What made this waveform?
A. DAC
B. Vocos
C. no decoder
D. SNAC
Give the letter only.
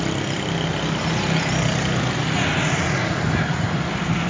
C